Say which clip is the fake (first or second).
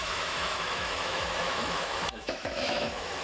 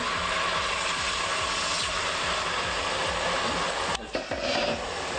first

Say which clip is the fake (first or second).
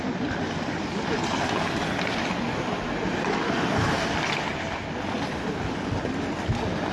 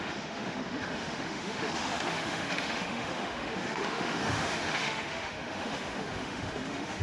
second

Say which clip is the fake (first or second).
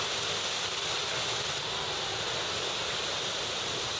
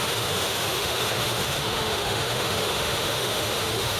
second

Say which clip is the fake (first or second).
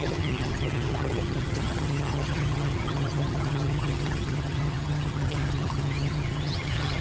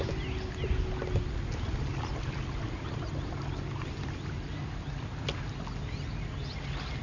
first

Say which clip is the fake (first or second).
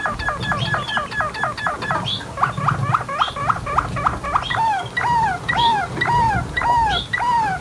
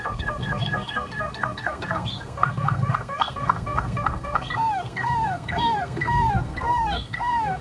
second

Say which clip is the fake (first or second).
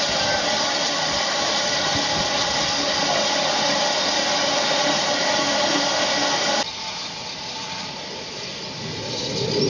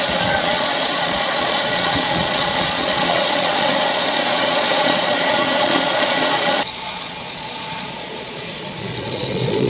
second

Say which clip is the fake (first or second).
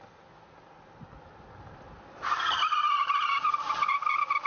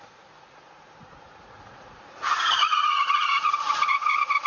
second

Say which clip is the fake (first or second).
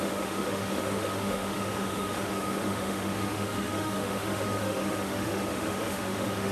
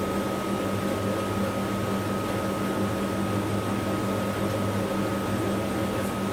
first